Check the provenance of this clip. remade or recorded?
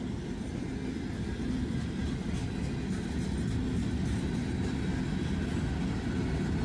recorded